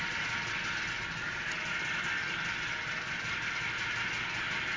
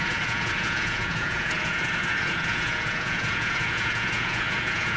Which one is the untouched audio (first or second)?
first